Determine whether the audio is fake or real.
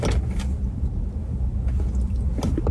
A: real